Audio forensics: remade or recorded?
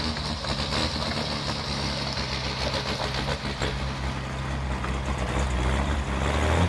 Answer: recorded